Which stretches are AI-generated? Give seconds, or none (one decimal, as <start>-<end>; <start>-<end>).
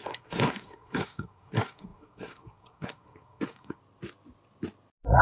0.0-3.8